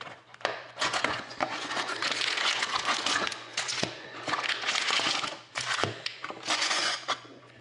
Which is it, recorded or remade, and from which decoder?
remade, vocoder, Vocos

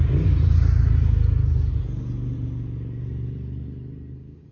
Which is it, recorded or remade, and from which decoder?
recorded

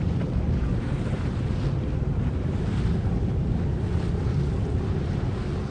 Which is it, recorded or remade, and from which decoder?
recorded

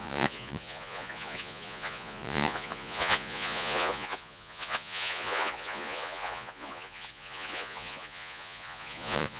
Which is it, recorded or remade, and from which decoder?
remade, vocoder, Vocos